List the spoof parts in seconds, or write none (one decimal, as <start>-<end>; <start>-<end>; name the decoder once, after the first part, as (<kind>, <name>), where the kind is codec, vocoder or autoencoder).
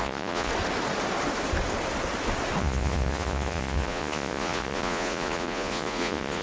0.0-0.5 (vocoder, Vocos); 2.6-6.4